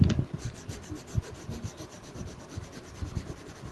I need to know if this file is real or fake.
real